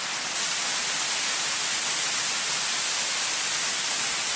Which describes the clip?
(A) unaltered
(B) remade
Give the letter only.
A